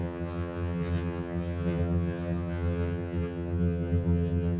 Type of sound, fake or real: fake